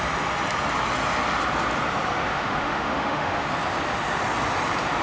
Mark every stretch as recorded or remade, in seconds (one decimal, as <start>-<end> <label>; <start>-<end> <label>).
0.0-2.3 recorded; 2.3-3.5 remade; 3.5-5.0 recorded